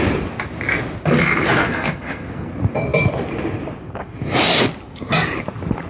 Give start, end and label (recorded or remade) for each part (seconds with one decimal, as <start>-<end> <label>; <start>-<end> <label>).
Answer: 0.0-1.6 recorded; 1.6-2.5 remade; 2.5-5.9 recorded